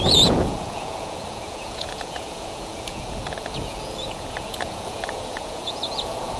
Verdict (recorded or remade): remade